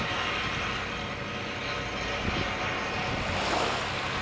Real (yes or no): yes